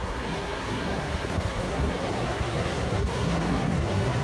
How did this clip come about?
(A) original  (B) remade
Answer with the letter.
B